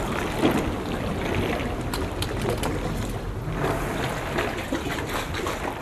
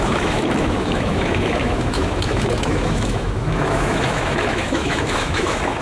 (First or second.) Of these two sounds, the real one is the first